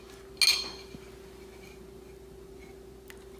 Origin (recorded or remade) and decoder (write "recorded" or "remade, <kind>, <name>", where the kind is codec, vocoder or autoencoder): recorded